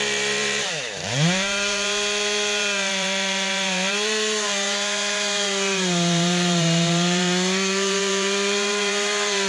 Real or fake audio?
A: fake